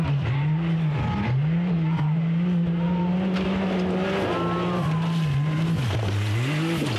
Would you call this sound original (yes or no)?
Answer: yes